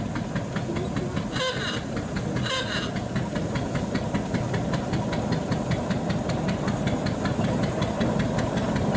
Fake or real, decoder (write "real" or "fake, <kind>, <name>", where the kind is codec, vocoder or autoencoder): real